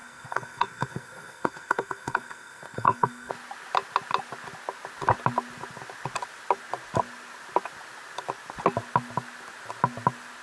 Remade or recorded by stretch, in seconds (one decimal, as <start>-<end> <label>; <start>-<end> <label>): 0.0-3.3 remade; 3.3-10.4 recorded